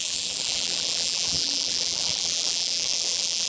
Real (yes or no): no